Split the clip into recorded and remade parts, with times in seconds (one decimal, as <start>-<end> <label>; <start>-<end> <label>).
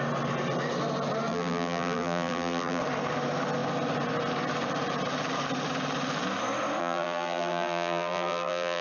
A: 0.0-1.3 recorded; 1.3-2.8 remade; 2.8-6.8 recorded; 6.8-8.8 remade